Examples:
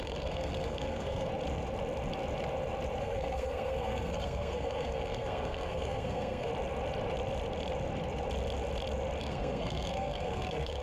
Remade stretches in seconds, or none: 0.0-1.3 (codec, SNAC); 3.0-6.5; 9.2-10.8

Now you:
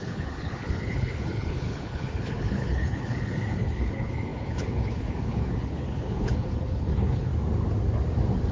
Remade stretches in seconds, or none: 0.0-7.3 (codec, HILCodec)

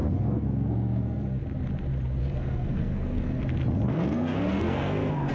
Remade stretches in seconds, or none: 0.0-1.4 (codec, SNAC); 2.2-3.4; 3.9-5.3

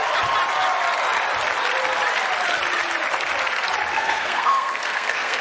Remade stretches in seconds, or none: 3.9-5.4 (codec, SNAC)

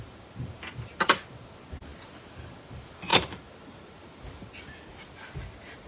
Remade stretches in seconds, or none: 3.1-3.9 (vocoder, BigVGAN v2)

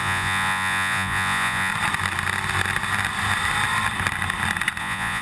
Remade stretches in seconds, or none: 0.0-1.7 (vocoder, Vocos); 4.8-5.2

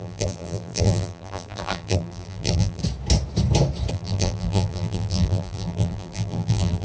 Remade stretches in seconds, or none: 0.0-2.8 (vocoder, BigVGAN v2); 3.9-6.8